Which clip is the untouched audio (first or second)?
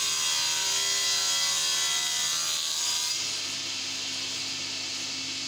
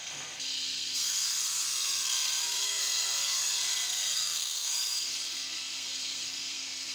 first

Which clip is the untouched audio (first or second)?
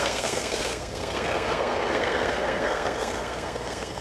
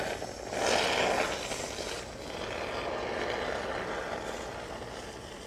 second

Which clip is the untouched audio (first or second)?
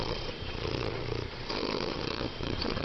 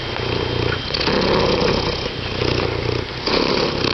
second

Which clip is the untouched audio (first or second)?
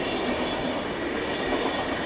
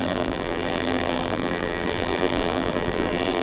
first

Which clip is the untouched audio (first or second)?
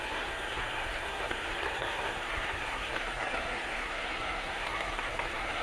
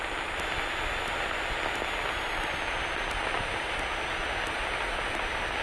second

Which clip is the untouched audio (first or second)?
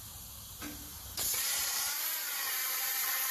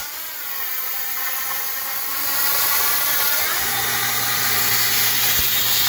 second